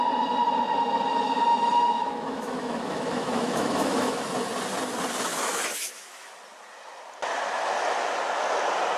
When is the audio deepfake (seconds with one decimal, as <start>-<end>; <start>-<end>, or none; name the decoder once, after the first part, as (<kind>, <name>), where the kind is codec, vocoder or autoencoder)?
1.5-4.2 (autoencoder, DAC-VAE); 5.3-6.3